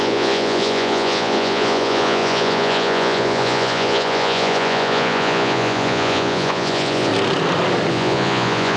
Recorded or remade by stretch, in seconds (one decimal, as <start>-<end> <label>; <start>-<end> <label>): 0.0-7.1 remade; 7.1-7.9 recorded; 7.9-8.8 remade